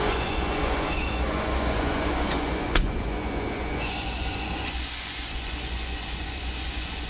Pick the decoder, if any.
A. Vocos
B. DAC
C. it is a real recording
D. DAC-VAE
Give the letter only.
A